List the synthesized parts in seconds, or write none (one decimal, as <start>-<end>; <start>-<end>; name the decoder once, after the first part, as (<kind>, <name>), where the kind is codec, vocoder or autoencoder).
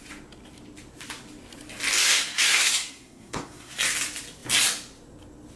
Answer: 2.0-3.8 (codec, SNAC)